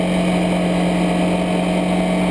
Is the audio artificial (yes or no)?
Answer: no